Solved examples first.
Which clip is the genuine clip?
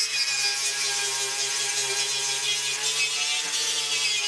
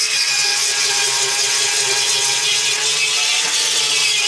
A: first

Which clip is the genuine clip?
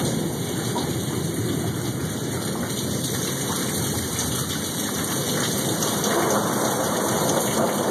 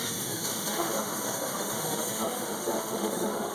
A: first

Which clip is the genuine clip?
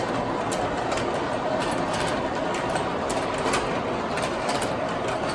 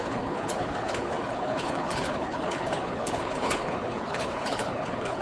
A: first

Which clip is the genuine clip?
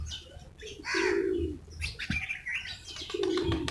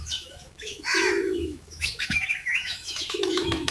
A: first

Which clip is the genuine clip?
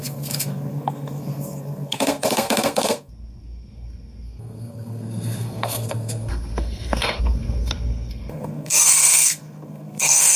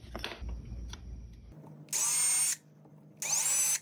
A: second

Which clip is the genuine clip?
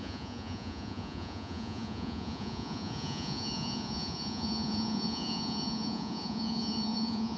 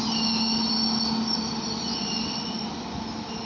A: second